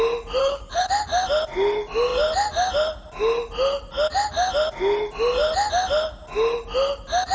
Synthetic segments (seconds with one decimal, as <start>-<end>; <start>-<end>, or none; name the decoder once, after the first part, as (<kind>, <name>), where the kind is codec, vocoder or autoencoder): 0.4-0.9 (codec, HILCodec)